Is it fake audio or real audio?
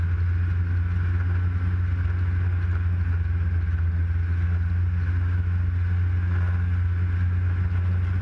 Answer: real